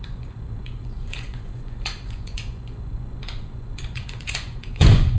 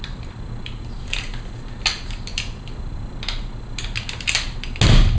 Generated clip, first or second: first